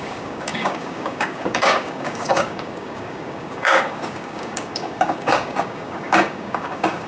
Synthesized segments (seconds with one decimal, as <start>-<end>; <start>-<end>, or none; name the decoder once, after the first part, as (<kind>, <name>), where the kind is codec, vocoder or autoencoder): 0.0-7.1 (codec, DAC)